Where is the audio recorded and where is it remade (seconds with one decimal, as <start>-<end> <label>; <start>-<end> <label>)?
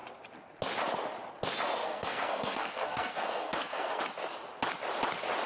0.0-1.8 recorded; 1.8-4.0 remade; 4.0-5.5 recorded